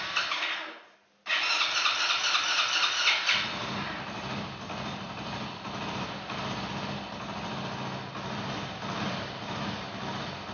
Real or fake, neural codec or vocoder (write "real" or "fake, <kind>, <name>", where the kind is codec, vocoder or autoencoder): real